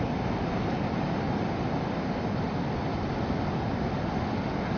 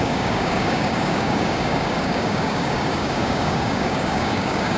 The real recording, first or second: first